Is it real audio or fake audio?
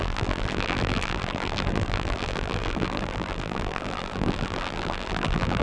fake